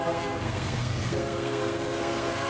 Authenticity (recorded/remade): remade